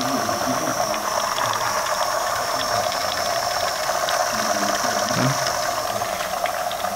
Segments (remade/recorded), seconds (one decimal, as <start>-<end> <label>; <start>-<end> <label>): 0.0-0.7 recorded; 0.7-3.8 remade; 3.8-7.0 recorded